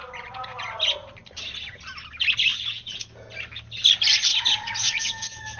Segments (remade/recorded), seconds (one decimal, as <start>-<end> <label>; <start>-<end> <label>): 0.0-1.1 remade; 1.1-2.5 recorded; 2.5-3.3 remade; 3.3-4.3 recorded; 4.3-5.6 remade